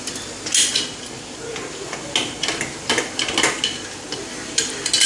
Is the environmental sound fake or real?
real